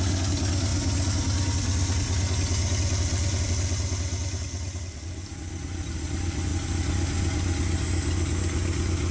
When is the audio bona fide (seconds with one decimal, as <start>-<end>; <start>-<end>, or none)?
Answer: 0.0-9.1